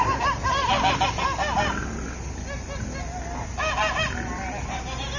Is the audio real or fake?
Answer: real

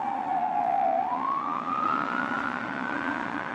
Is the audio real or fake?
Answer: fake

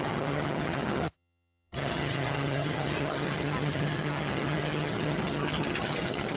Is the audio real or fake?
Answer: fake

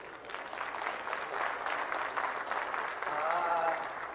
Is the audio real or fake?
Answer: real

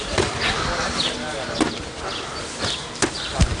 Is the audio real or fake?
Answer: real